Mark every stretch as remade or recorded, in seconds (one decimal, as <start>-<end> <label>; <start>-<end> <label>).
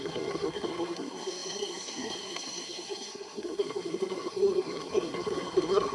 0.0-5.9 remade